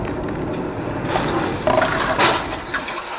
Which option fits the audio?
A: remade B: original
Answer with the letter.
B